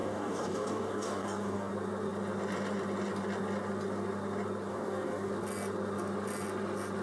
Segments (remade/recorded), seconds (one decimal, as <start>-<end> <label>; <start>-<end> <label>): 0.0-1.7 remade; 1.7-4.7 recorded; 4.7-5.3 remade; 5.3-7.0 recorded